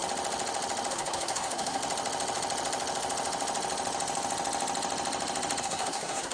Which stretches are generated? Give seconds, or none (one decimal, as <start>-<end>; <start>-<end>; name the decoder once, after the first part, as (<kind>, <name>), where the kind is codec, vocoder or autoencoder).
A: 0.9-1.8 (codec, SNAC); 5.6-6.3